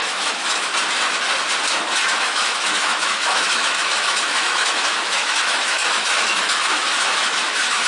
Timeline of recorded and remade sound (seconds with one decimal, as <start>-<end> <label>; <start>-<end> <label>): 0.0-0.7 remade; 0.7-2.2 recorded; 2.2-7.9 remade